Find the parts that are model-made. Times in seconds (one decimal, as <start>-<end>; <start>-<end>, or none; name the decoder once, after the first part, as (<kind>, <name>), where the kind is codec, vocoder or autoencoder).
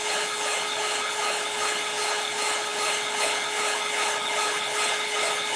0.0-5.6 (codec, HILCodec)